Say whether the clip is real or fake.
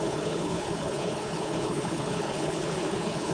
fake